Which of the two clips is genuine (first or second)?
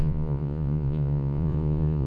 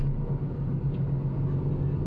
second